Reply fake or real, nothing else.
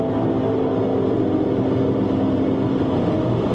real